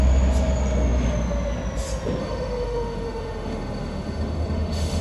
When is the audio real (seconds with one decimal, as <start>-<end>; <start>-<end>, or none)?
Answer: 0.0-2.2